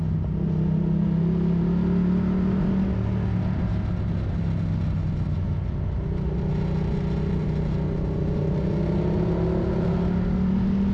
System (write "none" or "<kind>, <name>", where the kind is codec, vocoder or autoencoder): none